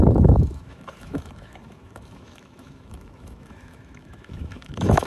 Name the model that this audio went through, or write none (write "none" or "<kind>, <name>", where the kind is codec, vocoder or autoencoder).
autoencoder, DAC-VAE